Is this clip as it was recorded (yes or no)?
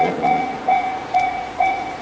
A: no